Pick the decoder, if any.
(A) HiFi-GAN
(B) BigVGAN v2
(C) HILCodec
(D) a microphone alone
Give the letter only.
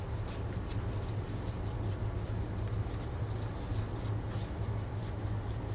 D